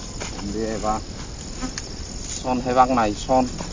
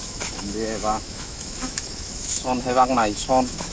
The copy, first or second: second